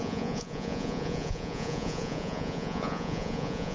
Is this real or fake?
fake